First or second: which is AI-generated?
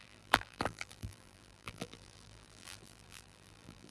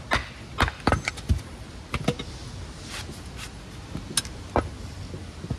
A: first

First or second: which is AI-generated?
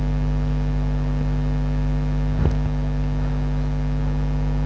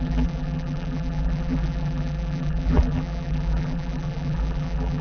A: second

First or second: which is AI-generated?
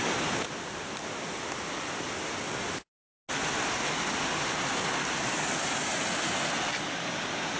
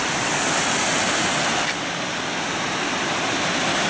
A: second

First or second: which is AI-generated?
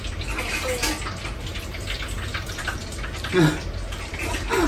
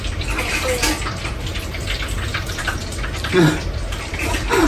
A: second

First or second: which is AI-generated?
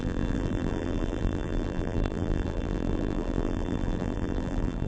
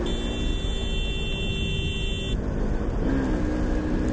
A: first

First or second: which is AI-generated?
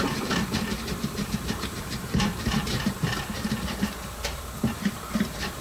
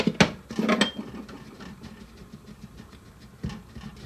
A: first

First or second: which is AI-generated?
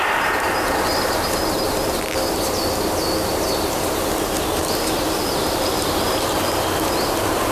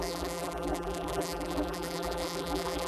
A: second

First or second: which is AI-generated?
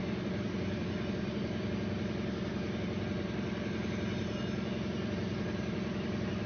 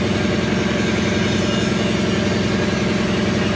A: first